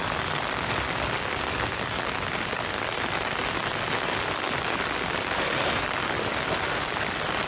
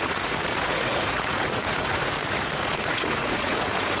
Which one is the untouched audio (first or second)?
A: first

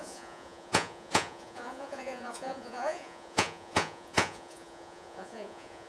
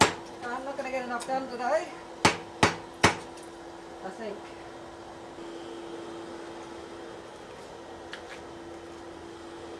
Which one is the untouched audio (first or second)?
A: second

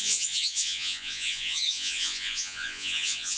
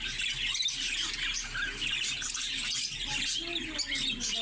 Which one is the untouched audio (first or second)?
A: second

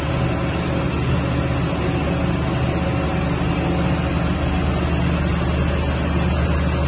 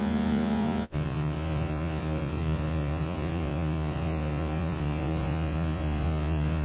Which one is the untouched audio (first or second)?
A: first